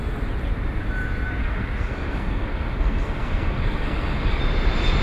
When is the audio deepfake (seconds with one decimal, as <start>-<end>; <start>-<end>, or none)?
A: 1.4-4.4